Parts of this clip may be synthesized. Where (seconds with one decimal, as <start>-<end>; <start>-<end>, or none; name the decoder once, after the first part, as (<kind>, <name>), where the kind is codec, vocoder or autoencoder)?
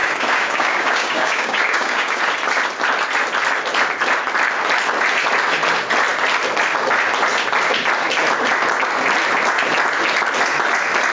0.0-2.2 (codec, DAC)